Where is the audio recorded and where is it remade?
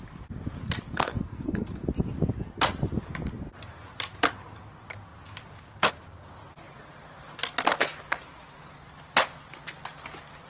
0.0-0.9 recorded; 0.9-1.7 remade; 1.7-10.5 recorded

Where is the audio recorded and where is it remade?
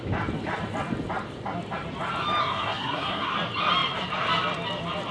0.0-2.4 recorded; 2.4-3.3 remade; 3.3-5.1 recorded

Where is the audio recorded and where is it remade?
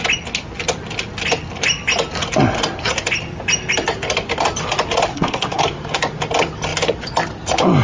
0.0-5.1 recorded; 5.1-5.6 remade; 5.6-7.8 recorded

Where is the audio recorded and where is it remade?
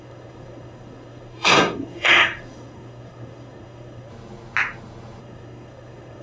0.0-4.1 remade; 4.1-5.2 recorded; 5.2-6.2 remade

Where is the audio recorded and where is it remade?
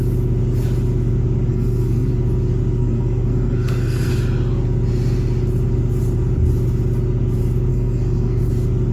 0.0-1.5 recorded; 1.5-2.1 remade; 2.1-2.8 recorded; 2.8-4.2 remade; 4.2-7.7 recorded; 7.7-8.5 remade; 8.5-8.9 recorded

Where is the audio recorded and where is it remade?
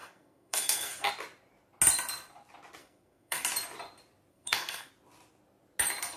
0.0-1.1 remade; 1.1-2.8 recorded; 2.8-3.4 remade; 3.4-4.3 recorded; 4.3-4.9 remade; 4.9-6.2 recorded